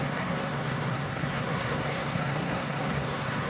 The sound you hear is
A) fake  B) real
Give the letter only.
A